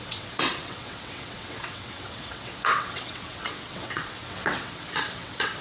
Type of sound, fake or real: fake